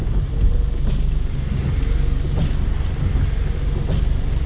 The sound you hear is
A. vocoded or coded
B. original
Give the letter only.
B